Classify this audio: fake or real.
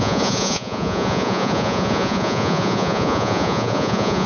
fake